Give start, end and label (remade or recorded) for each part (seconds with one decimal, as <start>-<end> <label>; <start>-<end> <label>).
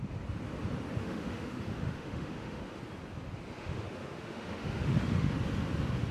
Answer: 0.0-1.0 recorded; 1.0-2.8 remade; 2.8-3.6 recorded; 3.6-5.3 remade; 5.3-6.1 recorded